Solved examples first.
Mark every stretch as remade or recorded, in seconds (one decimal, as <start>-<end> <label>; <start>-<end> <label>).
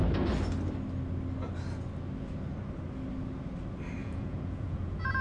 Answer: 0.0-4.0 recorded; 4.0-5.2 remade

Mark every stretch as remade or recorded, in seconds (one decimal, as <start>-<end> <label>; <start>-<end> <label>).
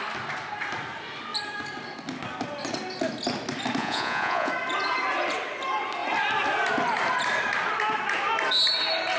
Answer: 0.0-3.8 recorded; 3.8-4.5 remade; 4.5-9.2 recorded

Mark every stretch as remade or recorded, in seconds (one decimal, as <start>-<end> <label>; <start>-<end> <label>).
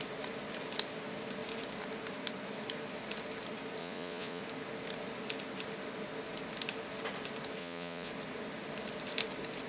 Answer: 0.0-3.8 recorded; 3.8-4.4 remade; 4.4-7.6 recorded; 7.6-8.1 remade; 8.1-9.7 recorded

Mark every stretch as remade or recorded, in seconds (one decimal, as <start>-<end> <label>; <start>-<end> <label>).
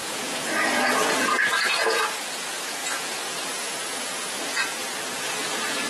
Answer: 0.0-5.9 remade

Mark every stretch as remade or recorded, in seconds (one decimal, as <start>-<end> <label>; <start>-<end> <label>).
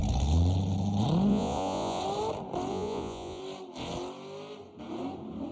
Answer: 0.0-1.3 recorded; 1.3-2.0 remade; 2.0-2.7 recorded; 2.7-3.4 remade; 3.4-5.5 recorded